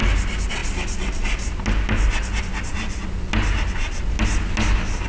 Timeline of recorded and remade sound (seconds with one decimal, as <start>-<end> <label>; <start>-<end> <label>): 0.0-5.1 recorded